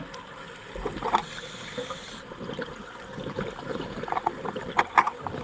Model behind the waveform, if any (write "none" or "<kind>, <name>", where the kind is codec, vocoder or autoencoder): none